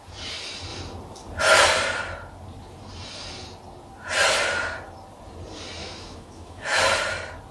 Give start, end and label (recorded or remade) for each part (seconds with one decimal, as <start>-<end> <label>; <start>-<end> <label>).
0.0-5.8 recorded; 5.8-6.8 remade; 6.8-7.5 recorded